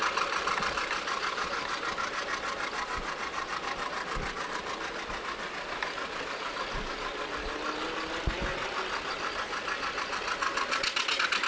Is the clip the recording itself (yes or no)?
yes